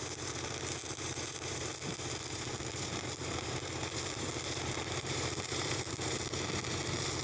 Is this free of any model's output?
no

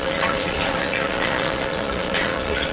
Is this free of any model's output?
no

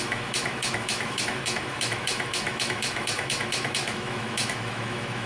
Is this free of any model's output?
no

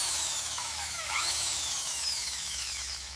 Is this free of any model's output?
no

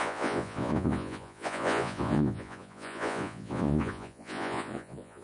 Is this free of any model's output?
no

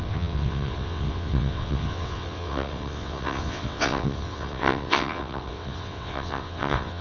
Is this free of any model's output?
no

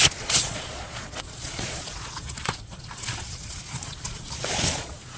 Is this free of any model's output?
no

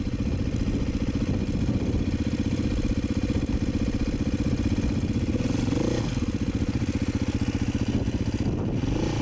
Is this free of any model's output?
yes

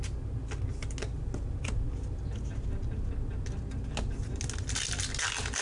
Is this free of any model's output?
yes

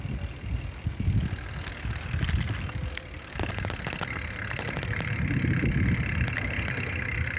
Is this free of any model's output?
yes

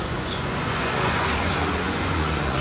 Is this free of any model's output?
no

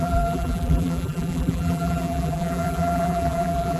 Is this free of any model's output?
no